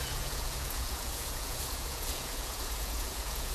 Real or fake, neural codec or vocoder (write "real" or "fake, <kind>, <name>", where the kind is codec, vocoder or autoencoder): fake, vocoder, Vocos